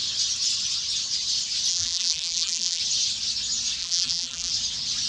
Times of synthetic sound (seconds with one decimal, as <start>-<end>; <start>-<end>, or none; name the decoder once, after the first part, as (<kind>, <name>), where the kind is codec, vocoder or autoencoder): 1.7-2.8 (vocoder, BigVGAN v2); 3.8-4.5